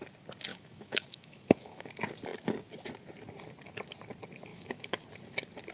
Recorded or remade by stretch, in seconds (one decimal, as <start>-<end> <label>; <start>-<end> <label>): 0.0-0.5 recorded; 0.5-1.9 remade; 1.9-4.5 recorded; 4.5-5.0 remade; 5.0-5.7 recorded